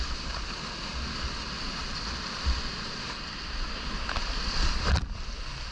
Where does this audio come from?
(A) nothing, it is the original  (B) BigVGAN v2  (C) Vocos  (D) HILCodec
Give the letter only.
A